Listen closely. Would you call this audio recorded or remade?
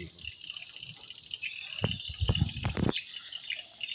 recorded